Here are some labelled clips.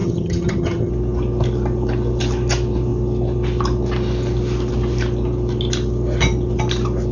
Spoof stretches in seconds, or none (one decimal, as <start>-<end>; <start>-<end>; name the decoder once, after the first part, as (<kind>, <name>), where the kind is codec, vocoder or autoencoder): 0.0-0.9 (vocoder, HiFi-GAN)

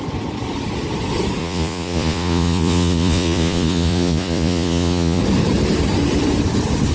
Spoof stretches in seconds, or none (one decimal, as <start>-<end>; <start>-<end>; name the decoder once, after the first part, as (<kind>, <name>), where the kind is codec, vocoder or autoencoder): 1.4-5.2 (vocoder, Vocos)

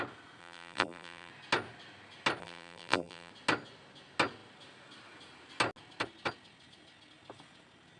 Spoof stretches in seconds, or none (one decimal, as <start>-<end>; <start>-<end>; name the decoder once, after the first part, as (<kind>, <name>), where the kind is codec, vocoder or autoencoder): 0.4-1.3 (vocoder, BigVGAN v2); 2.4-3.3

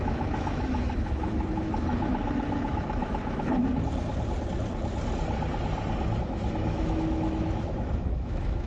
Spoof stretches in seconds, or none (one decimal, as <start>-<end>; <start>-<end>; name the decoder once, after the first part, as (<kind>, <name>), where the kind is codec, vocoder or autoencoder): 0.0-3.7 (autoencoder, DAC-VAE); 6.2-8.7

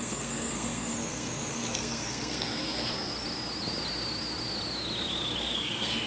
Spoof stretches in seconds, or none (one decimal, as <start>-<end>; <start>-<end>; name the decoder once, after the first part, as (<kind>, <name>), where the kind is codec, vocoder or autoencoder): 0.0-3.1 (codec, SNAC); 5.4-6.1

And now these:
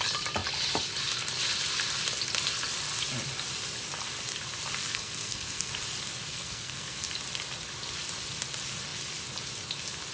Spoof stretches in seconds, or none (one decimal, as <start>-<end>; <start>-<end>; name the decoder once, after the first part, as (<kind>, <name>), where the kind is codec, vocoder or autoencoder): 4.8-5.7 (codec, SNAC); 6.3-7.1

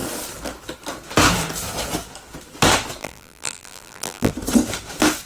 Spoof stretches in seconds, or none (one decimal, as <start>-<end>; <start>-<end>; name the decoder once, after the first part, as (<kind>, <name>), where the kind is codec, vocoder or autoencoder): 3.0-4.3 (vocoder, BigVGAN v2)